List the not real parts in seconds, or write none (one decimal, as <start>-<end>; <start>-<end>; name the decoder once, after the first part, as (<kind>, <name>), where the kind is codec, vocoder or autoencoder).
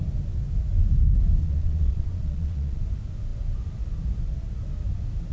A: 1.4-2.8 (vocoder, Vocos)